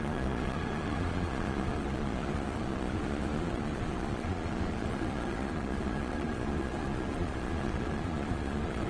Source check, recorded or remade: remade